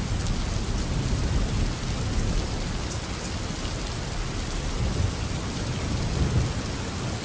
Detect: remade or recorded recorded